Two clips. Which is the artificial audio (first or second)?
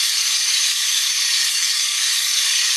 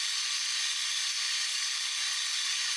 first